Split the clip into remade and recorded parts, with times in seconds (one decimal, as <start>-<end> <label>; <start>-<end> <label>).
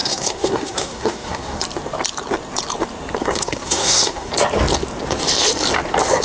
0.0-1.6 remade; 1.6-3.2 recorded; 3.2-4.3 remade; 4.3-6.2 recorded